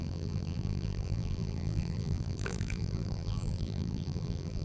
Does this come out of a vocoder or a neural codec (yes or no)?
yes